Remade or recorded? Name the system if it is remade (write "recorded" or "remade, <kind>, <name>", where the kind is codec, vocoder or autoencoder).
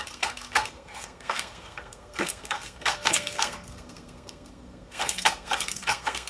remade, codec, SNAC